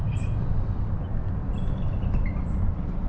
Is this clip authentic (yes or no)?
yes